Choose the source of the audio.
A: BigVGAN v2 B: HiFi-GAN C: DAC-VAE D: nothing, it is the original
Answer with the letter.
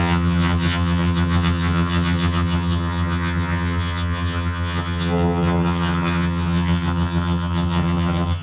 B